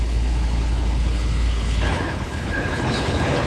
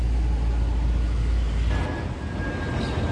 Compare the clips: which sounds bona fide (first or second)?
second